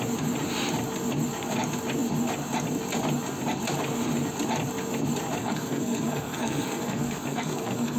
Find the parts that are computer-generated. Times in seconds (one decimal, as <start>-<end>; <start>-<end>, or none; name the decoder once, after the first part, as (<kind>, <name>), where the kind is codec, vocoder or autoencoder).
5.4-8.0 (codec, SNAC)